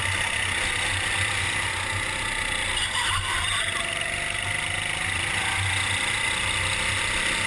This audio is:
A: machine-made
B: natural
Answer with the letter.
B